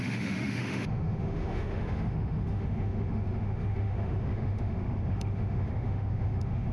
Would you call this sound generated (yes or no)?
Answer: yes